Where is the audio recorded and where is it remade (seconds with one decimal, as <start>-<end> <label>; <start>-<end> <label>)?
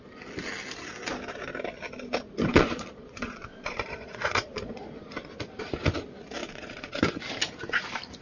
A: 0.0-2.5 recorded; 2.5-5.0 remade; 5.0-6.4 recorded; 6.4-7.0 remade; 7.0-8.2 recorded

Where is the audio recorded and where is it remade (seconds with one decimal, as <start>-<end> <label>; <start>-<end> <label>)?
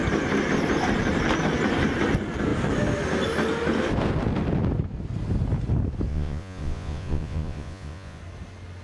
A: 0.0-6.1 recorded; 6.1-8.2 remade; 8.2-8.8 recorded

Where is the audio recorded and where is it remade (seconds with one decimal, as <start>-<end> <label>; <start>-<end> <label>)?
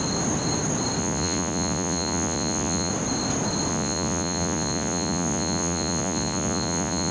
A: 0.0-1.0 recorded; 1.0-2.9 remade; 2.9-3.7 recorded; 3.7-7.1 remade